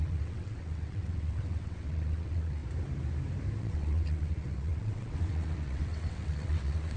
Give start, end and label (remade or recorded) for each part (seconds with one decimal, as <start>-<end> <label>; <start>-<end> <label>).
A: 0.0-2.6 remade; 2.6-3.6 recorded; 3.6-7.0 remade